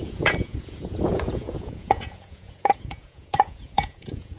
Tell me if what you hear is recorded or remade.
remade